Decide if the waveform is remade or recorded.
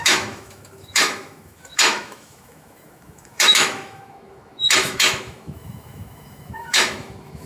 remade